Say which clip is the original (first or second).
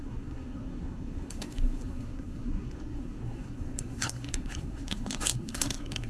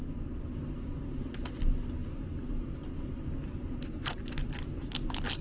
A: second